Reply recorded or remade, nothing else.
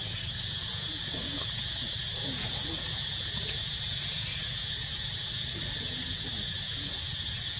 remade